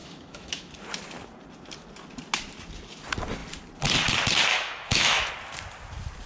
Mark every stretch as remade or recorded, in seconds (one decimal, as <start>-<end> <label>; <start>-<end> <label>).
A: 0.0-0.7 remade; 0.7-4.5 recorded; 4.5-5.3 remade; 5.3-6.3 recorded